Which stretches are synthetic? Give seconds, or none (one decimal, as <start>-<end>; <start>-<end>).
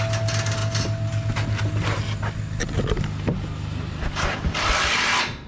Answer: none